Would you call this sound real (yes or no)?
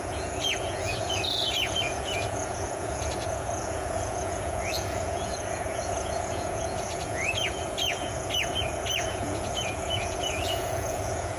no